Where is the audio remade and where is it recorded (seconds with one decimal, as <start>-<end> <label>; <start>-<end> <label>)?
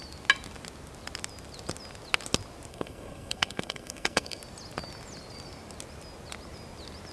0.0-2.7 recorded; 2.7-4.4 remade; 4.4-7.1 recorded